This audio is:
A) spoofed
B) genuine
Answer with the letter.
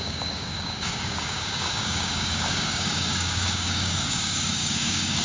A